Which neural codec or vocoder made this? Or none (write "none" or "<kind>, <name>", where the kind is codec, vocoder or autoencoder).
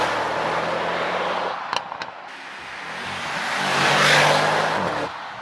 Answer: none